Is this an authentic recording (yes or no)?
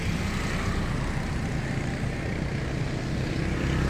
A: yes